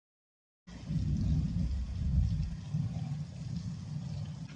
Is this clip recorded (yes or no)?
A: yes